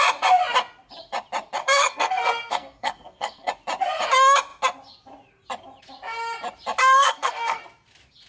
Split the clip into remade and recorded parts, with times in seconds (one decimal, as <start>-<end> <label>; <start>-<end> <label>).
0.0-1.6 recorded; 1.6-3.5 remade; 3.5-6.8 recorded; 6.8-7.6 remade; 7.6-8.3 recorded